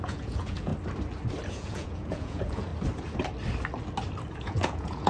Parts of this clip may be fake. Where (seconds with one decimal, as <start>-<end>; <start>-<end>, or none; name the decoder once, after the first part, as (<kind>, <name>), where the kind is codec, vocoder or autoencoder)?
0.0-0.7 (vocoder, Vocos); 1.5-2.7; 4.3-5.1

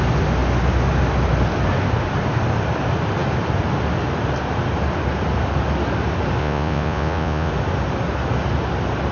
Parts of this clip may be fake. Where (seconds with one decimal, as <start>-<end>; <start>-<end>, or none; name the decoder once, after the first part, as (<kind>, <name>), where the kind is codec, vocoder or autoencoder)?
6.4-7.5 (vocoder, Vocos)